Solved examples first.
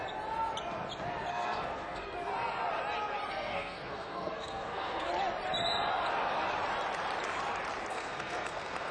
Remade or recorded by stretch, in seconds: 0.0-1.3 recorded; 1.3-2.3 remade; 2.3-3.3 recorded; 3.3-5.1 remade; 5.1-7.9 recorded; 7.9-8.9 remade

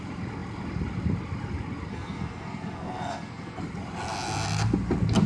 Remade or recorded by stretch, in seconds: 0.0-1.9 recorded; 1.9-3.6 remade; 3.6-5.3 recorded

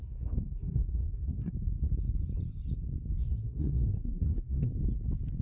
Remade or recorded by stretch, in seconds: 0.0-1.5 remade; 1.5-3.2 recorded; 3.2-4.7 remade; 4.7-5.4 recorded

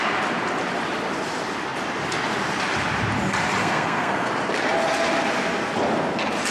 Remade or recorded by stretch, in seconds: 0.0-3.6 recorded; 3.6-4.3 remade; 4.3-6.5 recorded

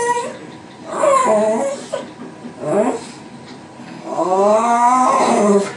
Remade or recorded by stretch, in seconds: 0.0-3.8 recorded; 3.8-5.1 remade; 5.1-5.8 recorded